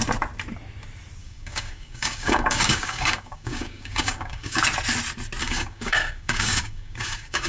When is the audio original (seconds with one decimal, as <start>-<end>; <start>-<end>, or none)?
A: 0.0-1.2; 4.6-5.4